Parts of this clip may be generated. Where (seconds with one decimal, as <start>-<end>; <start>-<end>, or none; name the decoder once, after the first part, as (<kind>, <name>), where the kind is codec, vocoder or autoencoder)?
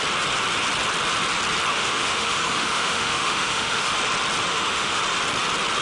1.7-3.9 (autoencoder, DAC-VAE); 4.5-5.0